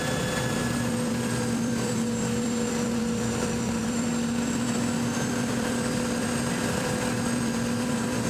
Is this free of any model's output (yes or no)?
no